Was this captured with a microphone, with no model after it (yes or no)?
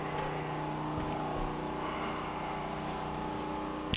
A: yes